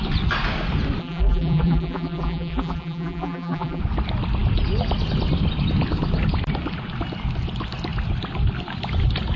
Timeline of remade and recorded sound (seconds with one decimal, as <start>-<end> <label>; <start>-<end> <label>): 0.0-1.0 recorded; 1.0-3.8 remade; 3.8-9.4 recorded